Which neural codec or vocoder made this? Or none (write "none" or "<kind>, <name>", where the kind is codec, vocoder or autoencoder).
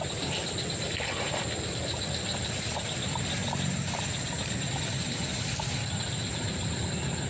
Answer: none